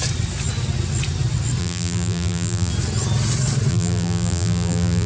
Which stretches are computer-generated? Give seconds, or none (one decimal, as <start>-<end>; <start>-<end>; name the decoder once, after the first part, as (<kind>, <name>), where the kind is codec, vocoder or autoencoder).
1.6-2.7 (vocoder, BigVGAN v2); 3.7-5.1